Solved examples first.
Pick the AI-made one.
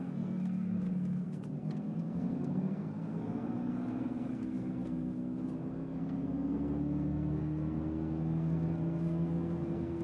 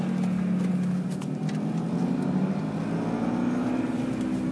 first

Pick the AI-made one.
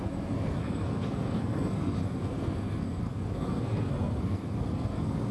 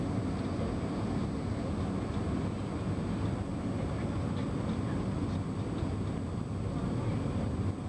first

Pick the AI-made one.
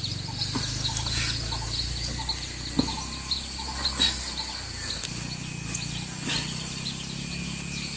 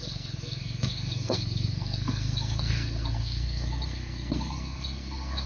second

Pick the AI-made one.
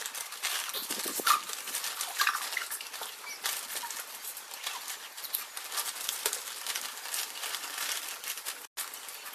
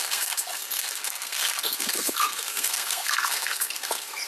second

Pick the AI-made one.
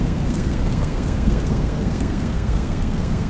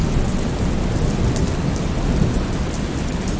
first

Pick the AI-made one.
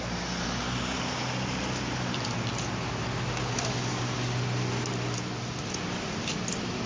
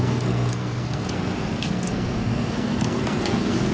second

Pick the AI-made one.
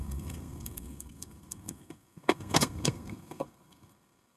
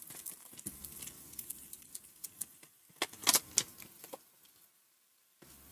first